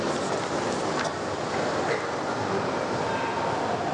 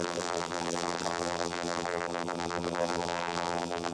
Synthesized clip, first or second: second